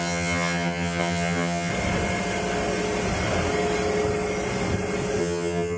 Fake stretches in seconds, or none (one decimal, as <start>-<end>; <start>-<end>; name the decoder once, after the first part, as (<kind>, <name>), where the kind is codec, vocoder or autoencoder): 0.0-1.7 (vocoder, HiFi-GAN); 5.2-5.8

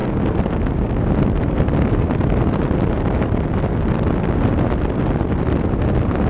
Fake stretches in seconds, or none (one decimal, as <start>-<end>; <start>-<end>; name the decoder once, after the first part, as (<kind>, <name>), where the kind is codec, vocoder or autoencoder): none

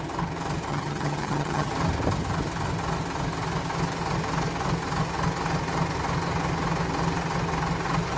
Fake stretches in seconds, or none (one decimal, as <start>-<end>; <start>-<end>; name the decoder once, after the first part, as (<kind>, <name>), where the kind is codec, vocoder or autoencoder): 0.7-1.7 (vocoder, HiFi-GAN)

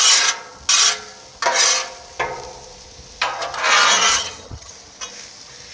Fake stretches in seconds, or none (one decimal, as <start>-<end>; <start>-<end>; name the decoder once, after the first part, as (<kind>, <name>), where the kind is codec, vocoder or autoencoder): 4.1-4.7 (vocoder, HiFi-GAN)